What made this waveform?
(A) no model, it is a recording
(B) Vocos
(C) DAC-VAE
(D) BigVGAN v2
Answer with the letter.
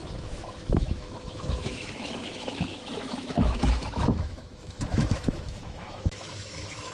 C